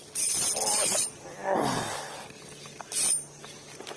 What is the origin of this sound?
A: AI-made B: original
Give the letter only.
B